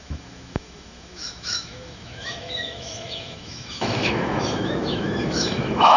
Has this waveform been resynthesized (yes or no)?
yes